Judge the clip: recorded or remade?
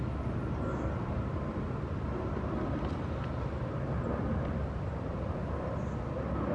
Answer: recorded